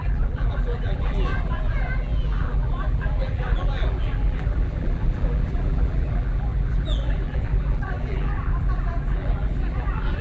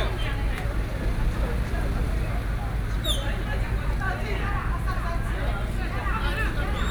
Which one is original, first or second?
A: second